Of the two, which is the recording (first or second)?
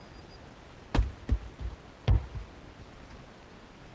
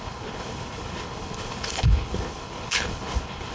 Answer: first